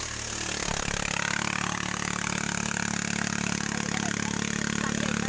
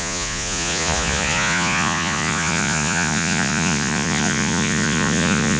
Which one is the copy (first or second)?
second